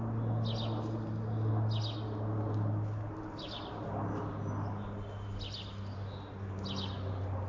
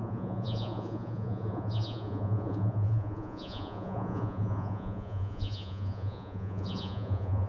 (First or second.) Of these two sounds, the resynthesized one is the second